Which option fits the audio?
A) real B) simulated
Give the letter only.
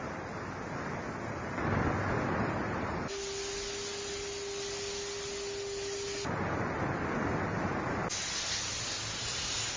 A